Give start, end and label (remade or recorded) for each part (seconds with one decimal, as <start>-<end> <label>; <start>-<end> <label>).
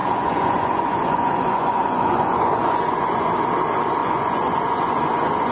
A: 0.0-3.3 remade; 3.3-4.0 recorded; 4.0-5.5 remade